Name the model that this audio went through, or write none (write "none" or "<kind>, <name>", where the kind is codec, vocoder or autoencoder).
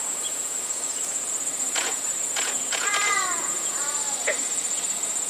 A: vocoder, Vocos